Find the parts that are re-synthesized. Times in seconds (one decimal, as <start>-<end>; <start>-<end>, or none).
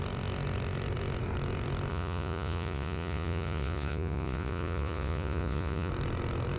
1.9-5.9